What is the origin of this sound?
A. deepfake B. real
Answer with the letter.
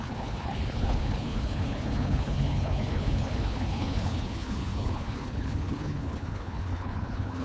A